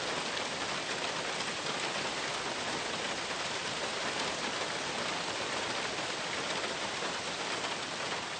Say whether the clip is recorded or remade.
recorded